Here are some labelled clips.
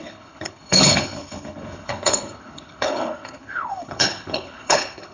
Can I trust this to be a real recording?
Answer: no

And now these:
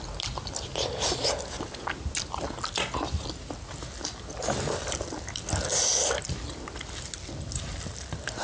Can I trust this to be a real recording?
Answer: yes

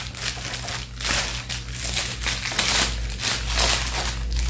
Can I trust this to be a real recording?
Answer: yes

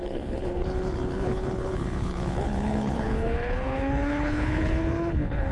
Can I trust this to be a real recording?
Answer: no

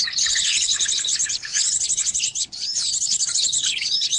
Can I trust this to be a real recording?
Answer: no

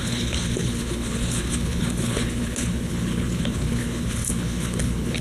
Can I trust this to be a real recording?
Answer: no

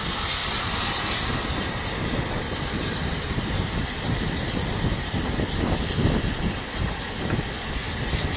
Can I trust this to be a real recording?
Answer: yes